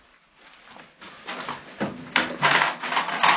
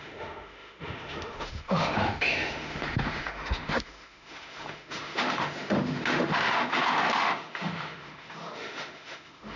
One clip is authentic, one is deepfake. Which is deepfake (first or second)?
second